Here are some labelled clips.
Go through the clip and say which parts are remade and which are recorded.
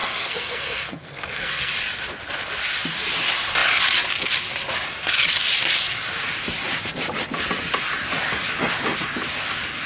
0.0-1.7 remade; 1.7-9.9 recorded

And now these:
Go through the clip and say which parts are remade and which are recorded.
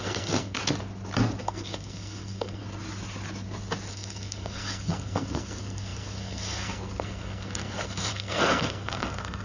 0.0-0.6 remade; 0.6-1.4 recorded; 1.4-2.6 remade; 2.6-3.9 recorded; 3.9-9.4 remade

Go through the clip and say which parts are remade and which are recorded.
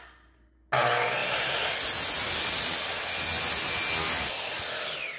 0.0-5.2 recorded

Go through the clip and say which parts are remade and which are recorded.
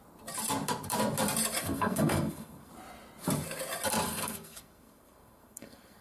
0.0-1.6 recorded; 1.6-2.7 remade; 2.7-4.1 recorded; 4.1-6.0 remade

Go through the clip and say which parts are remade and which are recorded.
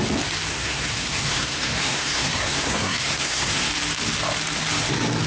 0.0-0.5 recorded; 0.5-3.7 remade; 3.7-5.3 recorded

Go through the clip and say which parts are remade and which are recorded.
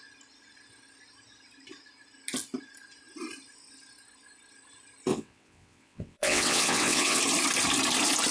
0.0-5.1 recorded; 5.1-7.2 remade; 7.2-8.3 recorded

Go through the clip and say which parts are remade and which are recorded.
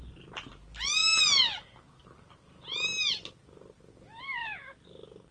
0.0-5.3 recorded